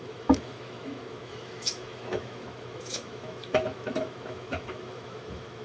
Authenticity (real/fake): fake